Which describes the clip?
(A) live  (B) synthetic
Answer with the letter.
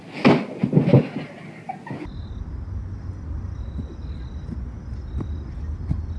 A